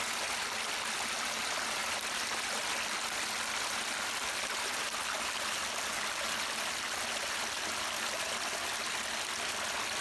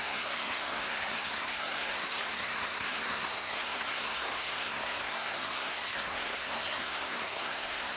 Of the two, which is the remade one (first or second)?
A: second